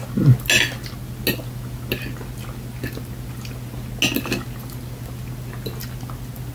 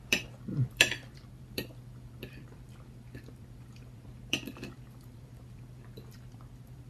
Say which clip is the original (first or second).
first